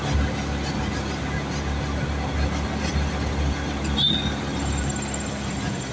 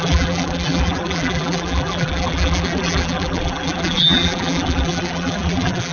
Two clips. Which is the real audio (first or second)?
first